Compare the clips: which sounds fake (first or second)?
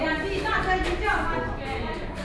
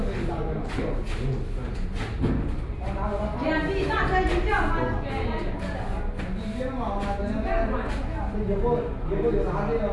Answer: first